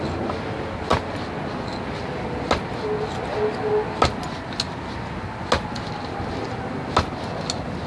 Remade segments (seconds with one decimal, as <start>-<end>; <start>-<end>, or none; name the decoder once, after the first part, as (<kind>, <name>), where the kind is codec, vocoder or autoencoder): none